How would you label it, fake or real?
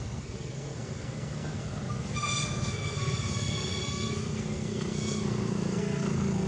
fake